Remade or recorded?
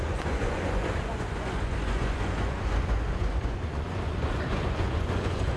remade